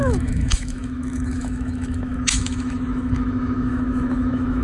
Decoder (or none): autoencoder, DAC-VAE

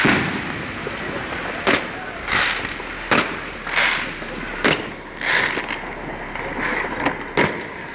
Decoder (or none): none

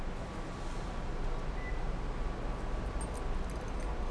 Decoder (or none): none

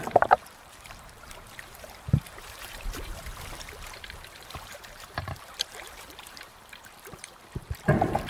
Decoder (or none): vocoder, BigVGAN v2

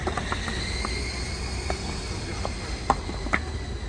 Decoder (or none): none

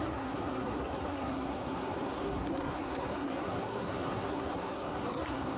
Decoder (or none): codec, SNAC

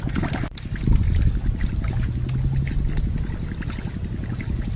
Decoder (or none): none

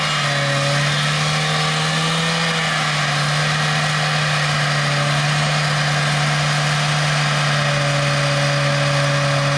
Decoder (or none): none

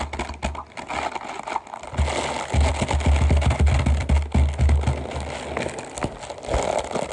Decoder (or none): none